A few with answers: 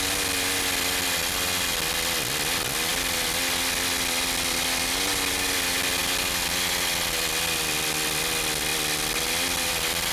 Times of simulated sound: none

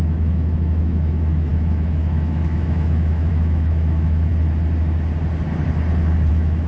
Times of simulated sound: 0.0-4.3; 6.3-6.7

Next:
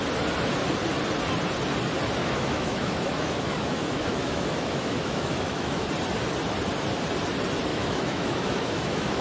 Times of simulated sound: 2.2-5.9; 7.7-9.2

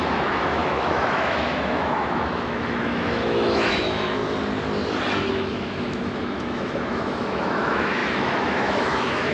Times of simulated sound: 0.0-4.2; 5.3-9.3

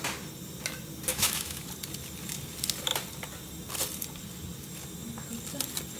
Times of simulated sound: 1.1-1.7

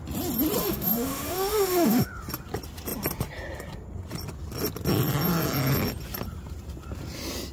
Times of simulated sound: 0.6-2.1

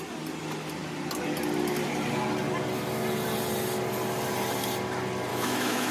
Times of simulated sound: 5.3-5.9